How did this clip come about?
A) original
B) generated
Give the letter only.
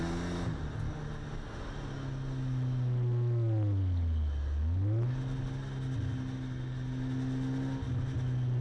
A